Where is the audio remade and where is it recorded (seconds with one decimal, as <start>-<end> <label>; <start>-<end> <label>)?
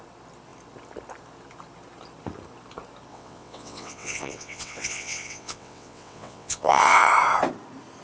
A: 0.0-3.1 recorded; 3.1-7.1 remade; 7.1-8.0 recorded